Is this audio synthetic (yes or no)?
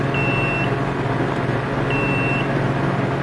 no